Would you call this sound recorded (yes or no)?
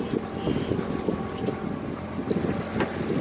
yes